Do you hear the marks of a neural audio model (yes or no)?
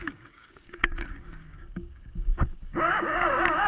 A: yes